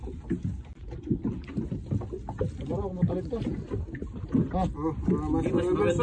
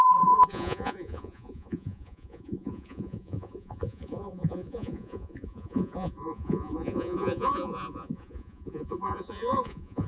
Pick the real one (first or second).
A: first